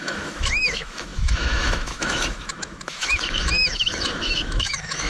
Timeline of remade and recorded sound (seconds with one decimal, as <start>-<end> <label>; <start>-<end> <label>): 0.0-5.1 remade